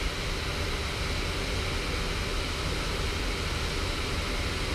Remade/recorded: recorded